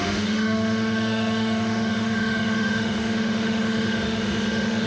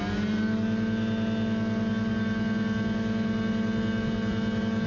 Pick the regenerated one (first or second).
first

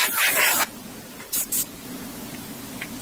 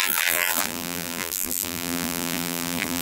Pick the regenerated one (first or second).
second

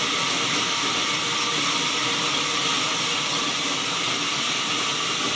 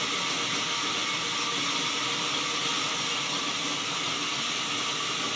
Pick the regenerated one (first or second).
first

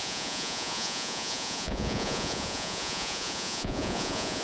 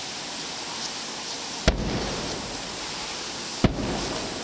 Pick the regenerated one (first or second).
first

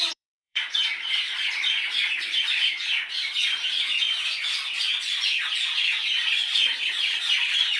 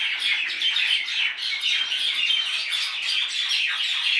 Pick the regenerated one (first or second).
first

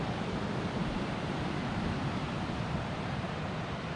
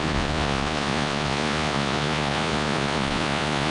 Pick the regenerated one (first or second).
second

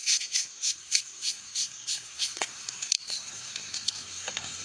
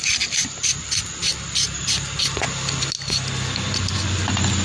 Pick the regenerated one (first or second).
first